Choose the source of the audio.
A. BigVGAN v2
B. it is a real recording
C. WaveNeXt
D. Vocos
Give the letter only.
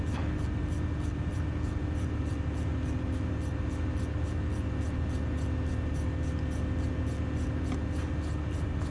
B